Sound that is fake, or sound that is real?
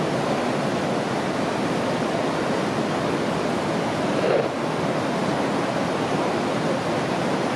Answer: real